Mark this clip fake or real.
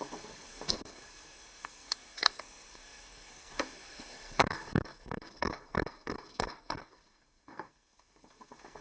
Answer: fake